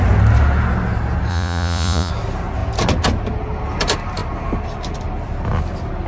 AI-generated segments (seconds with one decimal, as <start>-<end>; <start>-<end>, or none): 1.3-2.1